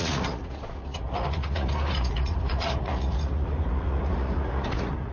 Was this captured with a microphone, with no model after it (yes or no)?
no